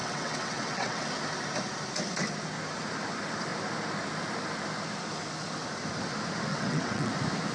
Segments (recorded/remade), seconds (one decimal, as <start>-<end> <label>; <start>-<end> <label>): 0.0-1.0 remade; 1.0-6.5 recorded; 6.5-7.1 remade; 7.1-7.5 recorded

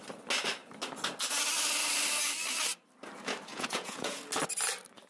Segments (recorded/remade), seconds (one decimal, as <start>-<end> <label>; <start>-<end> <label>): 0.0-3.5 recorded; 3.5-4.2 remade; 4.2-5.1 recorded

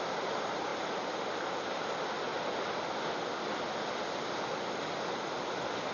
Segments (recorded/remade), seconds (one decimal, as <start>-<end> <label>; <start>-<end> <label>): 0.0-5.9 recorded

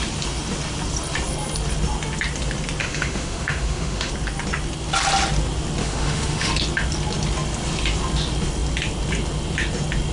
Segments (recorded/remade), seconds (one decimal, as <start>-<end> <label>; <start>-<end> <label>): 0.0-2.8 recorded; 2.8-4.1 remade; 4.1-5.8 recorded; 5.8-6.5 remade; 6.5-10.1 recorded

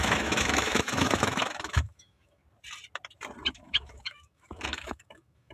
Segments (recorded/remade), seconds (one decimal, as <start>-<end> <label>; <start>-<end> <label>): 0.0-2.4 remade; 2.4-3.5 recorded; 3.5-5.5 remade

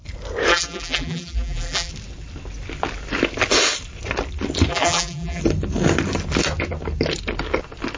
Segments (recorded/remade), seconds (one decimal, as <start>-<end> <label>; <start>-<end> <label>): 0.0-0.5 recorded; 0.5-1.9 remade; 1.9-4.7 recorded; 4.7-5.4 remade; 5.4-8.0 recorded

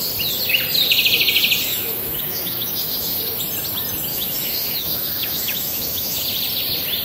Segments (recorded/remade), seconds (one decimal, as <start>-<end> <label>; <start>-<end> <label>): 0.0-1.7 recorded; 1.7-3.2 remade; 3.2-4.1 recorded; 4.1-6.2 remade; 6.2-7.0 recorded

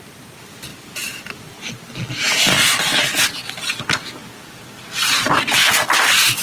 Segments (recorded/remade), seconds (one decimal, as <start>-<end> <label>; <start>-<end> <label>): 0.0-6.4 recorded